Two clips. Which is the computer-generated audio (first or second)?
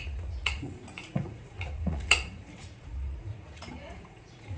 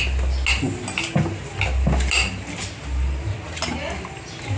first